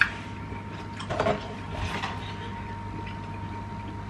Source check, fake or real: real